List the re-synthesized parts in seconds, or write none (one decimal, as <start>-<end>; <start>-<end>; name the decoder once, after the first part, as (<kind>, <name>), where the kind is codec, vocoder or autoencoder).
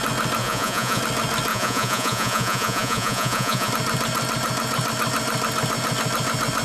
0.4-1.0 (vocoder, Vocos); 1.5-3.7